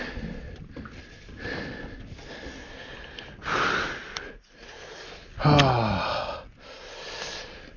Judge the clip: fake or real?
real